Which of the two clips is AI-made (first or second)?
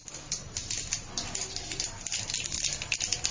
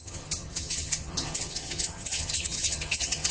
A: second